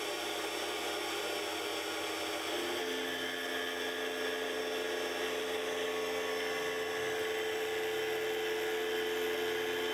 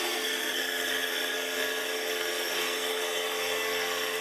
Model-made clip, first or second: second